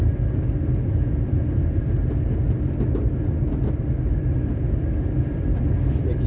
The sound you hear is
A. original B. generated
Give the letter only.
A